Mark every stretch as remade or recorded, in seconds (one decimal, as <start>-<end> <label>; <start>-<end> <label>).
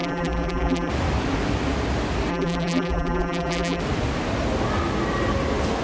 0.0-0.9 remade; 0.9-2.3 recorded; 2.3-3.8 remade; 3.8-5.8 recorded